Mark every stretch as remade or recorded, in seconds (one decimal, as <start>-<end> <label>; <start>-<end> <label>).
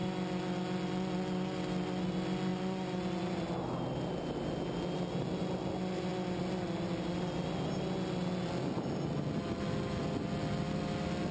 0.0-11.3 recorded